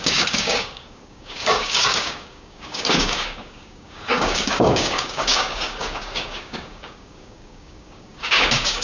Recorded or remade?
remade